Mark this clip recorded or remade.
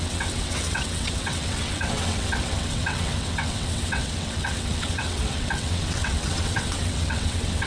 remade